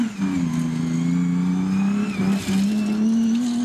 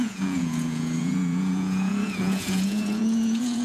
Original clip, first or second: first